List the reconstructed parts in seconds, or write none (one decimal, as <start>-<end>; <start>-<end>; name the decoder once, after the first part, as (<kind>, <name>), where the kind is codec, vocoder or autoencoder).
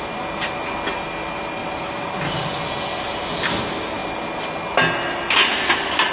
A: 1.6-2.5 (vocoder, BigVGAN v2)